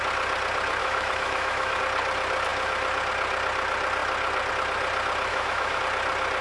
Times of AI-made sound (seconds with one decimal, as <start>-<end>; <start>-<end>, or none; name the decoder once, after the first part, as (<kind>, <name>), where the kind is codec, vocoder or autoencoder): 0.8-1.8 (autoencoder, DAC-VAE); 5.3-5.8